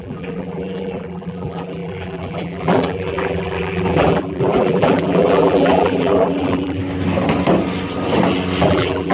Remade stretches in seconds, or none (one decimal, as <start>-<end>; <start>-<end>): 0.0-6.8; 8.6-9.1